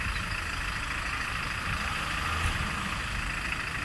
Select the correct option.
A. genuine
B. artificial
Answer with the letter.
A